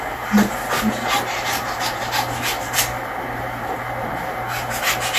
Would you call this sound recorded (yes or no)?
yes